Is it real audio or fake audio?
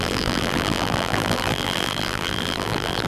fake